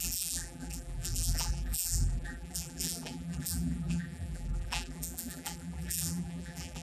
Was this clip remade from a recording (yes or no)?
yes